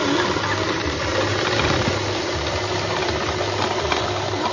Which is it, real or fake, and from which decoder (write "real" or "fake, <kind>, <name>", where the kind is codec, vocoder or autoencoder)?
real